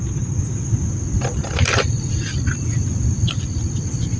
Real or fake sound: real